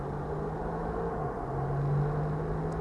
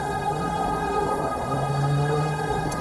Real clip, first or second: first